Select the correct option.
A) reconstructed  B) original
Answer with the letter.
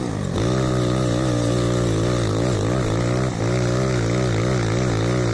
B